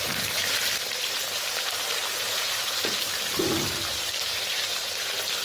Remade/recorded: remade